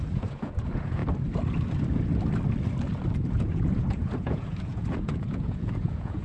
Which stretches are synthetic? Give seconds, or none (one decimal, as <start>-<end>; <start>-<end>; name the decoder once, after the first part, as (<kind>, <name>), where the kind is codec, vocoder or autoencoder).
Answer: 0.0-1.0 (vocoder, Vocos); 3.3-6.2